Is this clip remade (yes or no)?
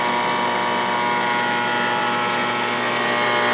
no